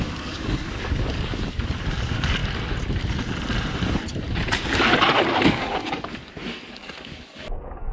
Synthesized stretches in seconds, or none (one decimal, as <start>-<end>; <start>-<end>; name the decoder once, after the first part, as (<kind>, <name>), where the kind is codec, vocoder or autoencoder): 0.0-2.4 (codec, DAC); 5.5-7.9